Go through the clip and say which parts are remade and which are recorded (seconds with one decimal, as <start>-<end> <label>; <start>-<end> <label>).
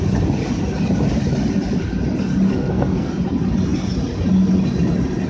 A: 0.0-2.5 recorded; 2.5-3.1 remade; 3.1-5.3 recorded